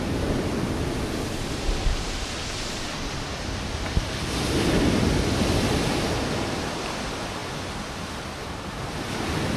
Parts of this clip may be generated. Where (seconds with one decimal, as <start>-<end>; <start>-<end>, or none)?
none